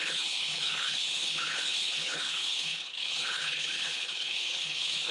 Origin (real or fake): fake